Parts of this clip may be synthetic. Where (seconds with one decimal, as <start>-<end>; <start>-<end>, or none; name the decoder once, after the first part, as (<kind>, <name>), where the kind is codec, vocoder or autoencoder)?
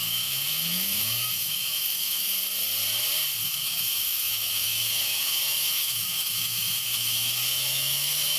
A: 0.0-2.3 (autoencoder, DAC-VAE); 3.4-8.4